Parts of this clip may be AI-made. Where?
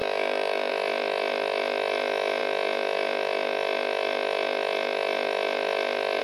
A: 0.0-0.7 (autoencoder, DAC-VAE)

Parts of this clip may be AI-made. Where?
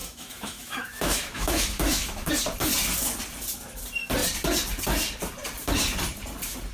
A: 0.0-2.3 (autoencoder, DAC-VAE)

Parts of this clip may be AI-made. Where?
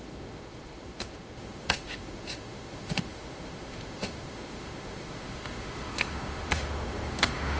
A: 0.0-7.6 (autoencoder, DAC-VAE)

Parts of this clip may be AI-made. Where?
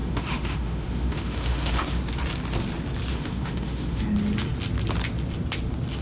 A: 0.0-2.0 (autoencoder, DAC-VAE); 3.1-4.0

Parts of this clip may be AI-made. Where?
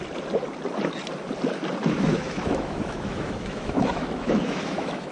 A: 1.8-5.1 (autoencoder, DAC-VAE)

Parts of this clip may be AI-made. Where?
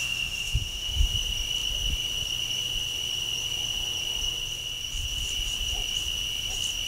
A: 0.0-1.1 (autoencoder, DAC-VAE)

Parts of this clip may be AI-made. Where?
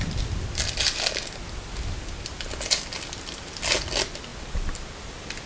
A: none